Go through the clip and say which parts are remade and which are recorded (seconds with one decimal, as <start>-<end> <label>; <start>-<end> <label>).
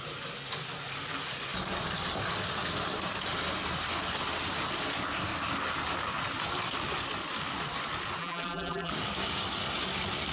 0.0-8.2 recorded; 8.2-8.9 remade; 8.9-10.3 recorded